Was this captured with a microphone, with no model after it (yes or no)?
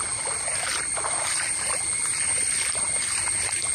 yes